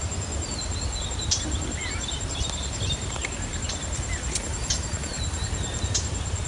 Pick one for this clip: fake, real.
real